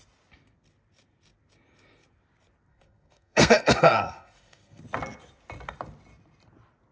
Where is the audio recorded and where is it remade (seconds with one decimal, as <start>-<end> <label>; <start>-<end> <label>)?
0.0-2.7 recorded; 2.7-4.8 remade; 4.8-6.9 recorded